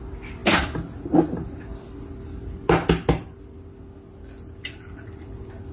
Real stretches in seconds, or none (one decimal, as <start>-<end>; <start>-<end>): 0.0-5.7